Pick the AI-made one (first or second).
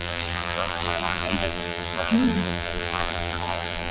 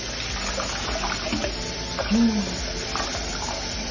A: first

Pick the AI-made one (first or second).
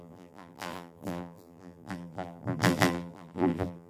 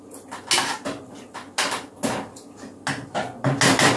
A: first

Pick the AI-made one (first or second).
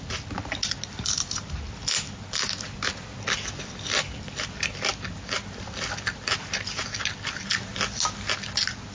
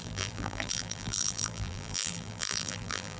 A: second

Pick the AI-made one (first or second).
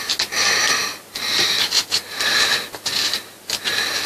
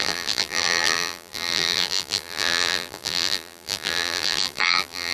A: second